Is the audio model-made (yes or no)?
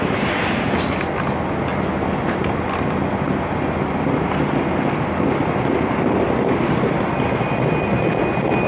no